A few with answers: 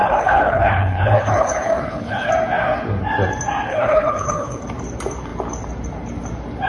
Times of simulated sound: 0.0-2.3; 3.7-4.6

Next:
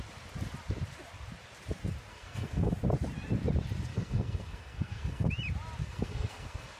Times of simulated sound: 2.1-2.7; 3.9-5.3; 5.8-6.8

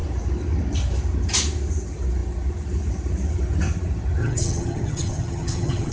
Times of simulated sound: 4.2-5.9

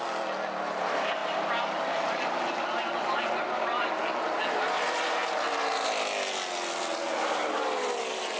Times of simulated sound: none

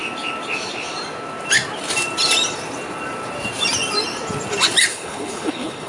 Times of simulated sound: 4.9-5.9